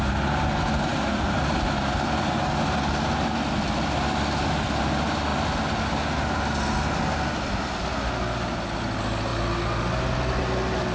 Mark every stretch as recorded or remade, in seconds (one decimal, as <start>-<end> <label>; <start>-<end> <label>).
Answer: 0.0-10.9 recorded